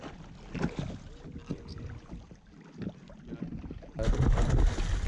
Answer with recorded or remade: recorded